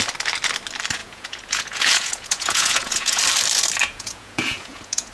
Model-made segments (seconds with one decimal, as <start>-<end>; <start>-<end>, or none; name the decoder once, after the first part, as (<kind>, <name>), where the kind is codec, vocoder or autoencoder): 1.0-3.2 (vocoder, Vocos); 3.8-5.1